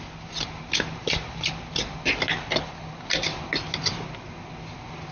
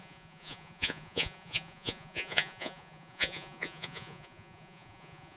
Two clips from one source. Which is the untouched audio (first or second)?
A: first